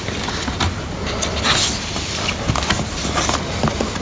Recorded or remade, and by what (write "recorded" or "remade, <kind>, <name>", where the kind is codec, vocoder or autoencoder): recorded